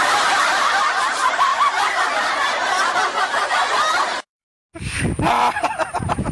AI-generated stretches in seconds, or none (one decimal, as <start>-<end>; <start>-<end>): 0.0-1.5; 5.3-6.3